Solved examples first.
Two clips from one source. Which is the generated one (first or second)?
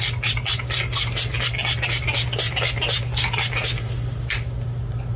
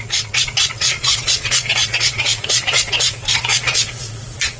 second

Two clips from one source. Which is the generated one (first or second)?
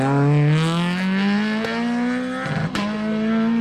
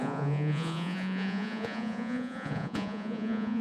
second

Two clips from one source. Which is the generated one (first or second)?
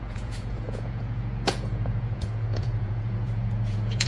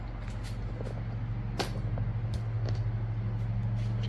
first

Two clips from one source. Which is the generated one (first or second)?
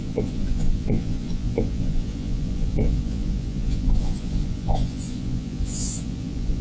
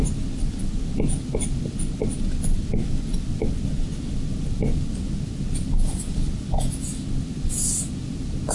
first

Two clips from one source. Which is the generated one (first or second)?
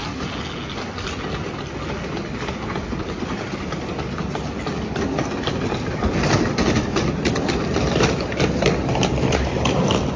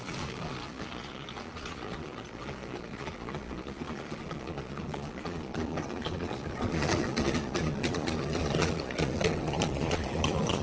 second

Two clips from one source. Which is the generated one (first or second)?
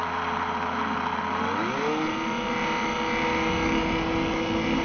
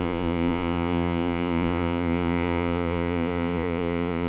second